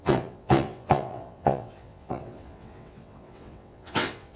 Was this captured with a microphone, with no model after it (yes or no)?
no